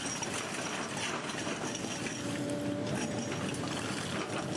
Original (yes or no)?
yes